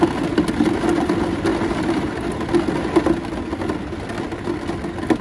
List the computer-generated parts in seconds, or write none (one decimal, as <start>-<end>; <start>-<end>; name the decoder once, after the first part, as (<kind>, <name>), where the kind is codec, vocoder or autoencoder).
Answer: none